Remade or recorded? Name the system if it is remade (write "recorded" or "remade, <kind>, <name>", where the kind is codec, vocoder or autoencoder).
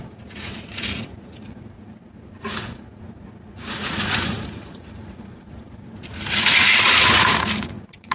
remade, vocoder, Vocos